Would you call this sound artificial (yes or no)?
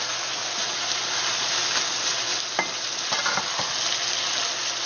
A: no